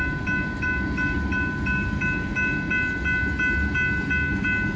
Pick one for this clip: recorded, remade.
recorded